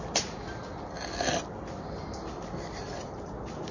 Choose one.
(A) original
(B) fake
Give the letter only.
A